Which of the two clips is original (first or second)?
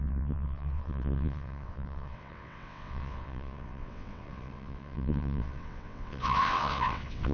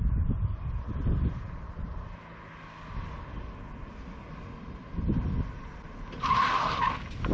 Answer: second